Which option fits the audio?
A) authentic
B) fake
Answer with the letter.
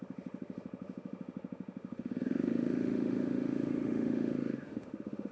B